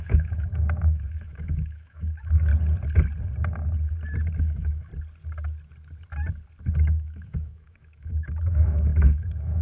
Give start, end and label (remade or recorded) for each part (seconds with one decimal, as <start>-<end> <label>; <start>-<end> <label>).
0.0-2.5 remade; 2.5-4.4 recorded; 4.4-4.9 remade; 4.9-6.7 recorded; 6.7-9.6 remade